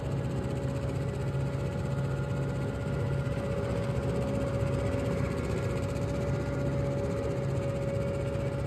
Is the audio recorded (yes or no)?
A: yes